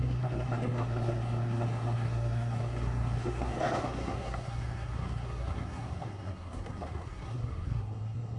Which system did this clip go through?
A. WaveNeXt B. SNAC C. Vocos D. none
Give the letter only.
B